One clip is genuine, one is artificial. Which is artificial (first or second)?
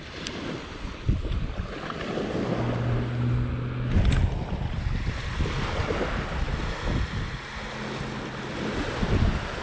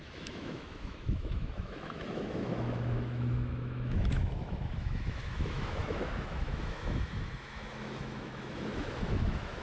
second